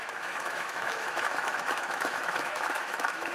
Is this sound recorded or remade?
remade